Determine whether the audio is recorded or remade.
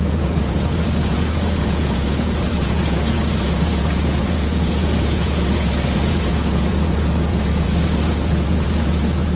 remade